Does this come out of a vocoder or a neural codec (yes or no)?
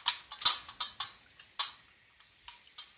no